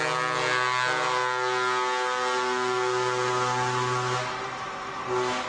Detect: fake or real real